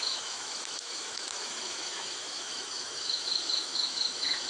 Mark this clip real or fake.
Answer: fake